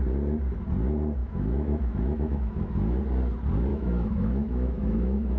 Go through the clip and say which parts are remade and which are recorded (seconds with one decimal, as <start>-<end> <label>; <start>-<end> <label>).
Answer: 0.0-1.2 recorded; 1.2-3.0 remade; 3.0-3.7 recorded; 3.7-5.4 remade